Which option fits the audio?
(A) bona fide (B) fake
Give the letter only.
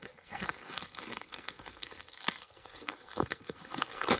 B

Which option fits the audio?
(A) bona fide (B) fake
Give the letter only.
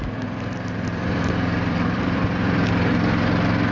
B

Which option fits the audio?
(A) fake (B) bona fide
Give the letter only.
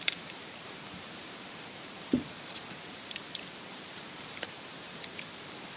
A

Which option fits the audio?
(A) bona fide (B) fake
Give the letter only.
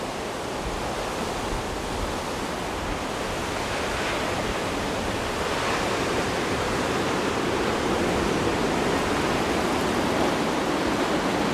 A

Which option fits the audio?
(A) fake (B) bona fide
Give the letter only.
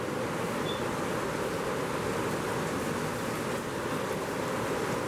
B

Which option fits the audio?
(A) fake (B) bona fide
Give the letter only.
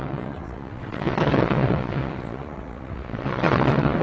A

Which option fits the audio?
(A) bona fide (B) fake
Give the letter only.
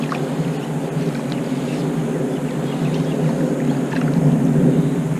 A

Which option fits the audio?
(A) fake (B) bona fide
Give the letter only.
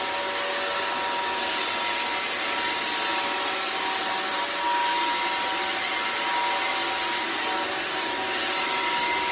B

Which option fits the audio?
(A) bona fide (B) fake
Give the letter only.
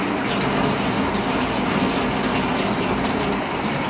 A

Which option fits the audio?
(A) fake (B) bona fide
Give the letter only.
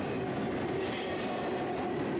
B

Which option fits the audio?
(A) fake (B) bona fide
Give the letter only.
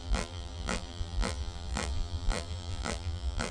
A